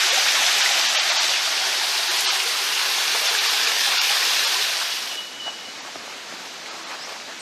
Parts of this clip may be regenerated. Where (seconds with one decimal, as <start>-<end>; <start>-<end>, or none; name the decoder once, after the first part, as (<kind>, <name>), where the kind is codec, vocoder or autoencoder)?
3.6-4.2 (codec, DAC)